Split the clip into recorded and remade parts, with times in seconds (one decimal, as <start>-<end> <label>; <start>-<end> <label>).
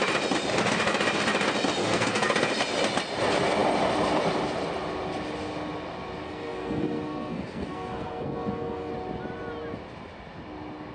0.0-1.8 recorded; 1.8-2.5 remade; 2.5-6.2 recorded; 6.2-8.9 remade; 8.9-10.9 recorded